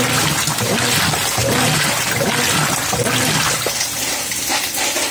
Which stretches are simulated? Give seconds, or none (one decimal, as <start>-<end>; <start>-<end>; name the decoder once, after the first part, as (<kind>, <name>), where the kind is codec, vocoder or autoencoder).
none

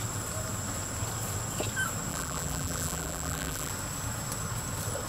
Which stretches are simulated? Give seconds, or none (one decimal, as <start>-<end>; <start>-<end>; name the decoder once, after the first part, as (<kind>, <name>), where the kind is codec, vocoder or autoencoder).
2.1-3.7 (vocoder, BigVGAN v2)

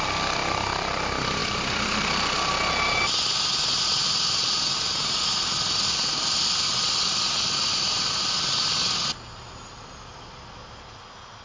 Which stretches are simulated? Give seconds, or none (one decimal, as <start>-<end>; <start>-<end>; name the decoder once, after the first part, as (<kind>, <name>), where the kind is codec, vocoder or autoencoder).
none

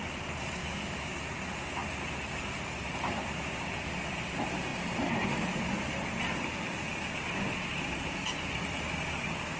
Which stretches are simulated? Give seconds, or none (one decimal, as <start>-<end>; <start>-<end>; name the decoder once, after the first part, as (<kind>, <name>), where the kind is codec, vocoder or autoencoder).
0.6-1.2 (codec, DAC)